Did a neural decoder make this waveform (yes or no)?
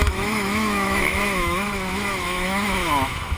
yes